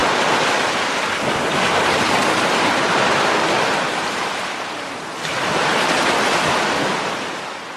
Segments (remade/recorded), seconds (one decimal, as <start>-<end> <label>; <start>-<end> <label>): 0.0-7.8 recorded